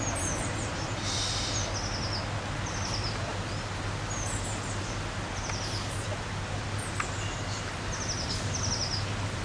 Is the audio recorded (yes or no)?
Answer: yes